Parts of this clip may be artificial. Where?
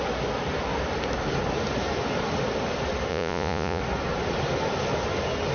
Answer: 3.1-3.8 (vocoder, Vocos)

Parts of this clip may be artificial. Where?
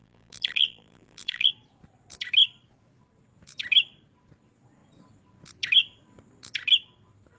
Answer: 0.0-1.5 (vocoder, BigVGAN v2)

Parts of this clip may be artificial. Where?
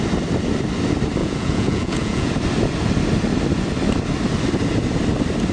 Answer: 1.2-2.3 (vocoder, Vocos)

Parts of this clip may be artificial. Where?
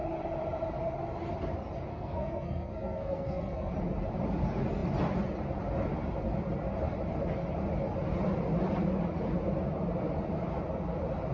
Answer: 1.9-3.7 (codec, SNAC)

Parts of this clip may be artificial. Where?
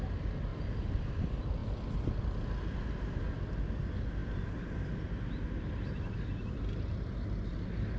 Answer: none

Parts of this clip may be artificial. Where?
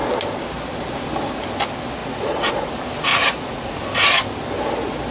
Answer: 2.0-2.7 (vocoder, Vocos); 3.1-3.8